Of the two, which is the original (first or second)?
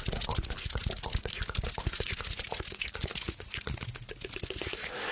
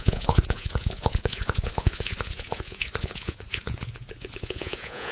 first